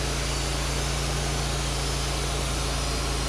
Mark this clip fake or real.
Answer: real